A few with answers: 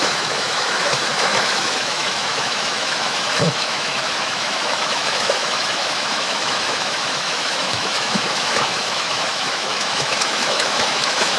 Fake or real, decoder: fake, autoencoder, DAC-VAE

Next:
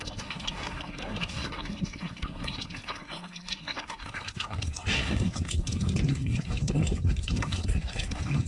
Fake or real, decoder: fake, codec, SNAC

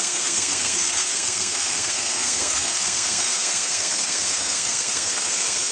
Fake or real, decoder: fake, codec, SNAC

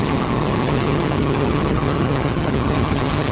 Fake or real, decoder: fake, vocoder, HiFi-GAN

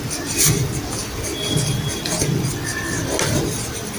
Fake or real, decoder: real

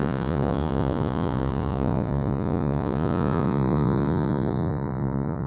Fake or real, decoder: fake, vocoder, Vocos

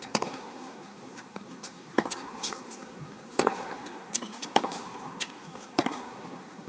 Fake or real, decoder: fake, codec, SNAC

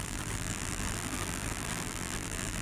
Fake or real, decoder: fake, vocoder, BigVGAN v2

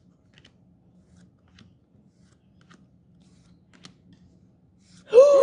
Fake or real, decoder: real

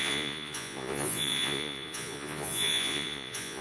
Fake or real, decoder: fake, vocoder, Vocos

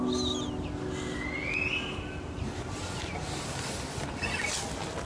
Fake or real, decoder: real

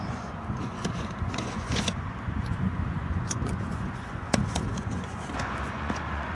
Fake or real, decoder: fake, vocoder, Vocos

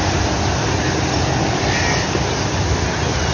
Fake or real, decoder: real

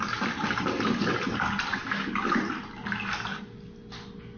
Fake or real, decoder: real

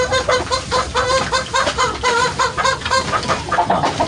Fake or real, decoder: real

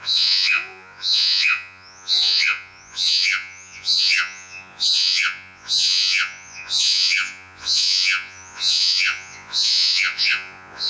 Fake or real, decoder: fake, vocoder, Vocos